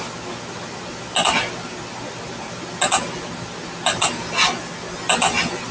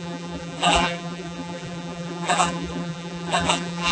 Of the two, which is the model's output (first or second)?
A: second